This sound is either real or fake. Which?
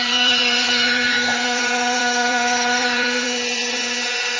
fake